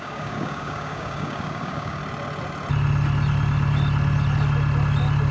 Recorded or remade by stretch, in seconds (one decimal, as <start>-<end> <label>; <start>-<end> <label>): 0.0-2.0 remade; 2.0-5.3 recorded

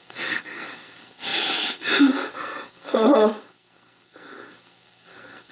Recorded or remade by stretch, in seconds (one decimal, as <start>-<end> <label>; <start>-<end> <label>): 0.0-5.5 remade

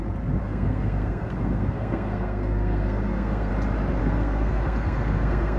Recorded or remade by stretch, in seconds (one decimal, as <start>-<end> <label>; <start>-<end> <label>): 0.0-0.4 recorded; 0.4-3.5 remade; 3.5-4.0 recorded; 4.0-5.6 remade

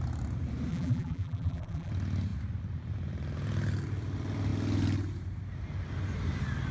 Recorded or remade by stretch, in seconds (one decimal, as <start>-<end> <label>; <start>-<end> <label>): 0.0-0.7 recorded; 0.7-1.9 remade; 1.9-6.7 recorded

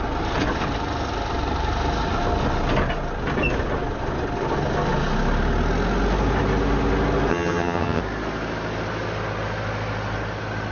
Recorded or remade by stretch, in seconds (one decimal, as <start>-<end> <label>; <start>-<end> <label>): 0.0-7.3 recorded; 7.3-8.0 remade; 8.0-10.7 recorded